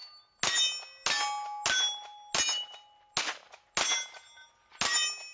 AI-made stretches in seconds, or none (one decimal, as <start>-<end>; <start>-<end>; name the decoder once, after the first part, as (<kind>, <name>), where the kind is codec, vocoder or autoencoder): none